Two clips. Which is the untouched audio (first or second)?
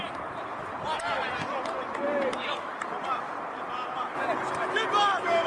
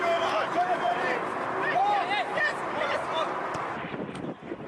first